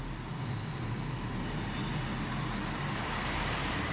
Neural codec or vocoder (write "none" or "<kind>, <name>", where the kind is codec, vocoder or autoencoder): none